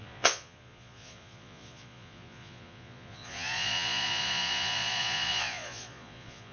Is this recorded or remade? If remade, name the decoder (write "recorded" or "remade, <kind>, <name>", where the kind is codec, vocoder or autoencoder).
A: remade, vocoder, Vocos